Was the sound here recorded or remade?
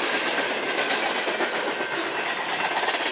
recorded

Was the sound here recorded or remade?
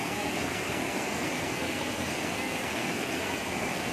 remade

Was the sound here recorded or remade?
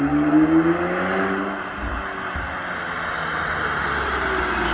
recorded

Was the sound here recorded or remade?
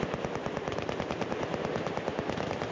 recorded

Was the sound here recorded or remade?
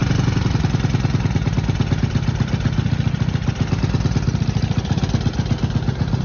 recorded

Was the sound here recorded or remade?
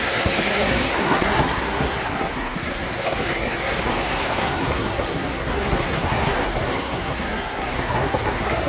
remade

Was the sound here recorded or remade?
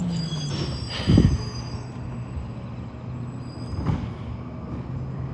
recorded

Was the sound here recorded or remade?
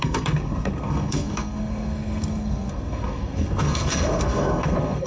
remade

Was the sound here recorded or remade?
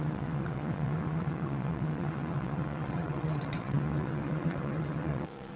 remade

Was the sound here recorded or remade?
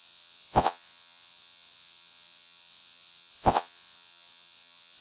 remade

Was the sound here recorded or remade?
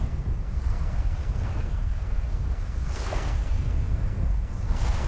remade